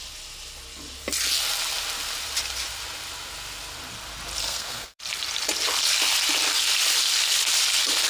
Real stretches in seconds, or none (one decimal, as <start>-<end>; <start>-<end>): 0.0-4.4; 5.0-8.1